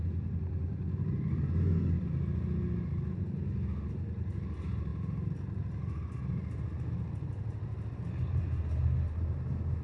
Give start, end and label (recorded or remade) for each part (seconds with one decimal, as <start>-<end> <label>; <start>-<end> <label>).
0.0-9.8 recorded